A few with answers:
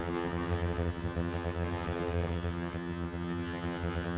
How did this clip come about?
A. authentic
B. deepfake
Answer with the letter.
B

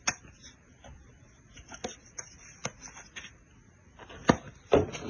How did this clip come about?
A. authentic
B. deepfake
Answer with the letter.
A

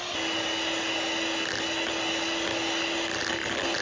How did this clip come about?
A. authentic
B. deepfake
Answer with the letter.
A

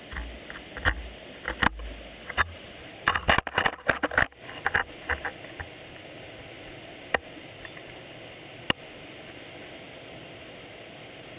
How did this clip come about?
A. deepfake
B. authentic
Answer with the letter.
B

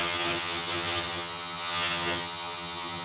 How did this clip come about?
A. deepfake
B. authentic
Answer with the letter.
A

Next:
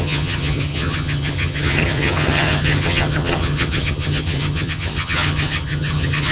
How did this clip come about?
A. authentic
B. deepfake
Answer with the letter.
B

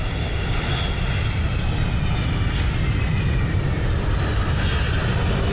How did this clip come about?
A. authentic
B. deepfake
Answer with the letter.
A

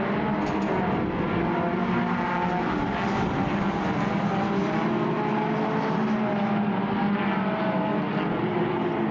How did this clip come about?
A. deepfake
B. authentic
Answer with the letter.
B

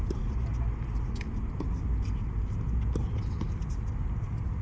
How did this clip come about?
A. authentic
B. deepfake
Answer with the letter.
A